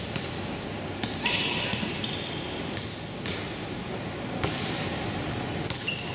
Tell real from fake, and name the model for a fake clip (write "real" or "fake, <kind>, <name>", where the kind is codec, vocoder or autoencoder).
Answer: real